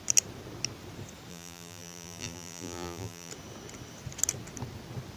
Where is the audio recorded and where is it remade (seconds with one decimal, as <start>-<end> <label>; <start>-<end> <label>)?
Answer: 0.0-1.3 recorded; 1.3-3.3 remade; 3.3-5.2 recorded